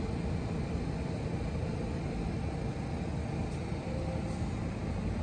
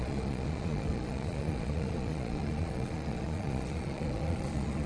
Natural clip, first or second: first